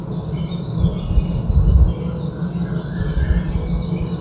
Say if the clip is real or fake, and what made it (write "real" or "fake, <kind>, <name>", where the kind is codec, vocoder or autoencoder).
real